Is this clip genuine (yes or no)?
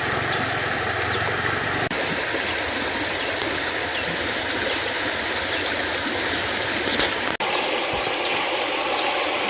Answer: yes